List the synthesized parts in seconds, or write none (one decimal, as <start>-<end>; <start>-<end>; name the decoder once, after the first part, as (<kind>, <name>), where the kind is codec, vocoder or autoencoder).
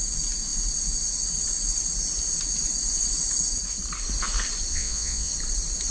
4.7-5.3 (vocoder, Vocos)